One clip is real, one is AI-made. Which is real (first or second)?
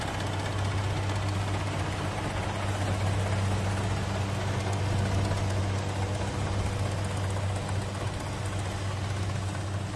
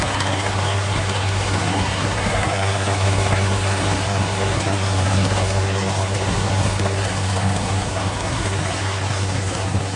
first